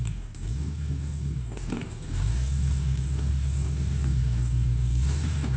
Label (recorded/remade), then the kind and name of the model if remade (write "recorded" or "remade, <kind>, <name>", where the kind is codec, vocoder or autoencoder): remade, codec, DAC